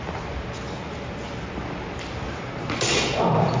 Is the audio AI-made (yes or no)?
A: no